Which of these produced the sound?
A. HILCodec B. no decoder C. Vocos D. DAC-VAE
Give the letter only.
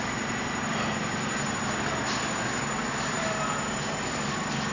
B